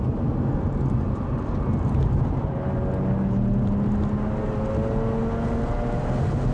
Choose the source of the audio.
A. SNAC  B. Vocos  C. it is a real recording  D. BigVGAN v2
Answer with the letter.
C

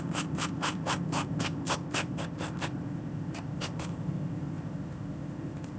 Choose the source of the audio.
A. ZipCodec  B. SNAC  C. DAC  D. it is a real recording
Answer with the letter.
A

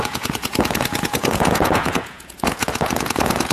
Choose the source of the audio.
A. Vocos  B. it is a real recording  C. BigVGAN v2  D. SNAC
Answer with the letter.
A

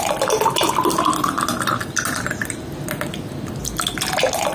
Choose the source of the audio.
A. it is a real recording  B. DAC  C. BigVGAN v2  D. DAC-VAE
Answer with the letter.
A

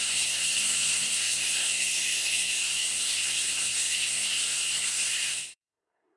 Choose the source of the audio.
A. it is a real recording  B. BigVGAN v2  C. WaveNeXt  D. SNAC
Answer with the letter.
D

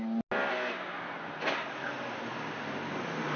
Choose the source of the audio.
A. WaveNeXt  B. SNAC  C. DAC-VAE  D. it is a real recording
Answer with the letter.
D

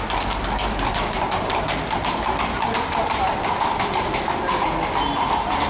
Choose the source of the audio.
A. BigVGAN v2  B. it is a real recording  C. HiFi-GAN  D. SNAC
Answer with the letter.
B